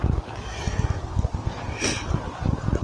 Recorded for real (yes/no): yes